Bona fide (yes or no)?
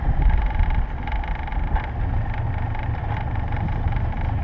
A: yes